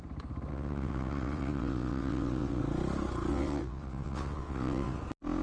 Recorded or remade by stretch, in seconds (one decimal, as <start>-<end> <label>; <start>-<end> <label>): 0.0-0.5 recorded; 0.5-2.6 remade; 2.6-3.3 recorded; 3.3-5.0 remade; 5.0-5.4 recorded